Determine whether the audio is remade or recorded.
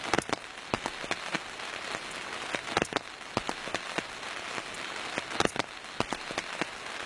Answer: recorded